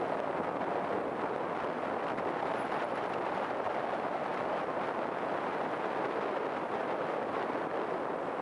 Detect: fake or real real